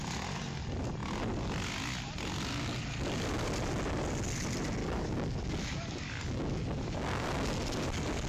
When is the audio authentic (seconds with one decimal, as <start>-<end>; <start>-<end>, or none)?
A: 0.0-4.8; 7.5-8.3